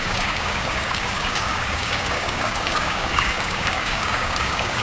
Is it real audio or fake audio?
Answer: fake